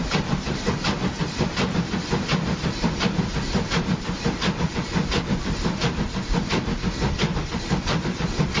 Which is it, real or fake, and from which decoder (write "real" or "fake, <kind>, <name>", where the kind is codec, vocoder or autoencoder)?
real